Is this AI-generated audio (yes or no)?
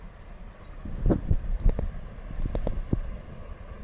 no